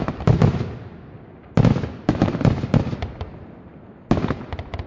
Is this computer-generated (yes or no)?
no